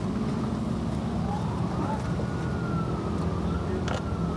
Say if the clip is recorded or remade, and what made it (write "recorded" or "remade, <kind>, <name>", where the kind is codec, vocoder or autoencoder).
recorded